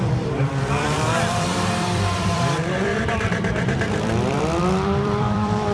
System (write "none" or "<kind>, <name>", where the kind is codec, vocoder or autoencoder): vocoder, BigVGAN v2